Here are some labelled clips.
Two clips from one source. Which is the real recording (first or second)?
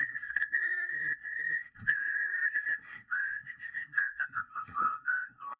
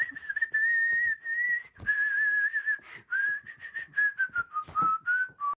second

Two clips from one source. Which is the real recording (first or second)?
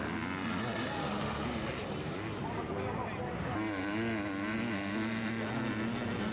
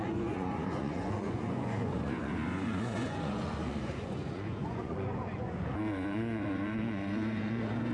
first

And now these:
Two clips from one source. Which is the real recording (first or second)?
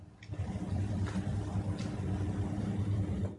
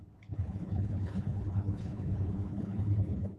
first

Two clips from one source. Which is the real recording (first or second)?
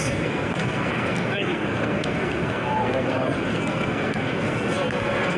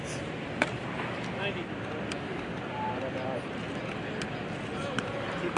second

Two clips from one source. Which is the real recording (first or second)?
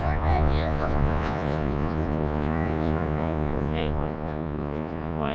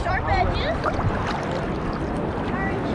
second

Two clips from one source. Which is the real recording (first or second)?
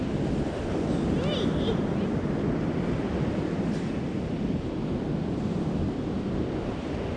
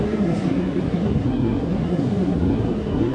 first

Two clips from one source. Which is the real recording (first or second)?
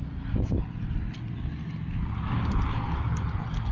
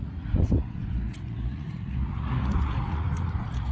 first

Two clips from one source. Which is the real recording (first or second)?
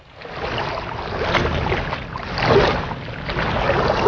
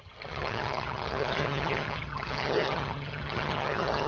first